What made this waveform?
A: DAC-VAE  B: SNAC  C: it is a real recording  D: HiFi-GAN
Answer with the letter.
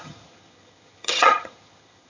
D